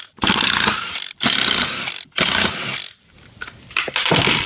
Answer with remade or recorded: remade